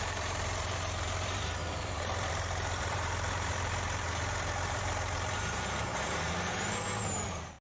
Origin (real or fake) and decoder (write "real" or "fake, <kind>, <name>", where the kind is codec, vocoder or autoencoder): fake, vocoder, BigVGAN v2